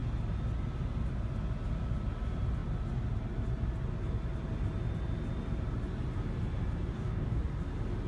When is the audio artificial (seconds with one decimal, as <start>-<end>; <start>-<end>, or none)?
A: 6.9-7.4